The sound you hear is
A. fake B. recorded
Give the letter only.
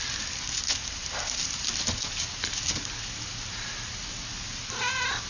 B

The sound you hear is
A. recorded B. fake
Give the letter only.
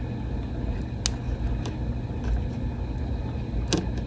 A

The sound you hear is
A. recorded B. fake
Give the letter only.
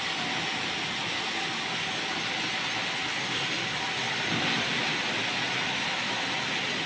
A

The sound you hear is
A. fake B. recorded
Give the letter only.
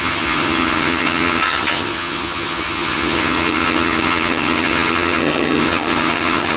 A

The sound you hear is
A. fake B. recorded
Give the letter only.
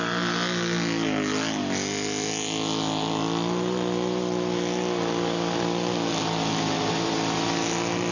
B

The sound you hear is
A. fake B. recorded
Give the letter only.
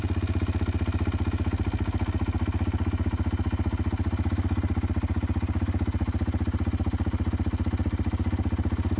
B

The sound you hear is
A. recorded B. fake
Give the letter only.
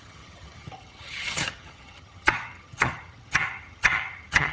B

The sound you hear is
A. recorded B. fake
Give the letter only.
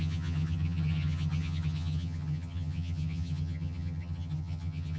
B